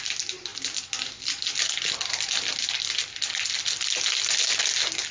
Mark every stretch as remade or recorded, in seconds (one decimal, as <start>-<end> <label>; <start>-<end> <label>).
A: 0.0-5.1 recorded